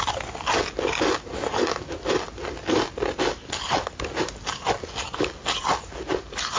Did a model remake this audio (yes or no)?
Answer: no